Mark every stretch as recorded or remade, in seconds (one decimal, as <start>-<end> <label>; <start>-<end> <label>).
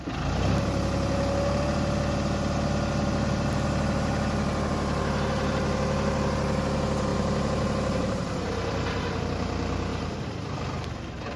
0.0-7.1 recorded; 7.1-9.2 remade; 9.2-9.9 recorded; 9.9-11.4 remade